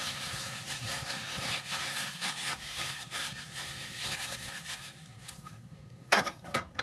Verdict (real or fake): fake